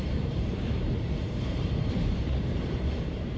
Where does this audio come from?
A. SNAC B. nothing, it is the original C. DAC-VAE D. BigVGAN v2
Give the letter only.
D